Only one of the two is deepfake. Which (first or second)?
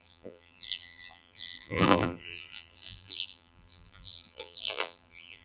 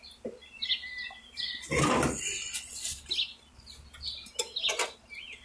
first